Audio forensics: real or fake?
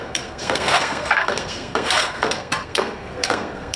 fake